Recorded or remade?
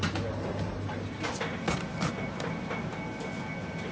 recorded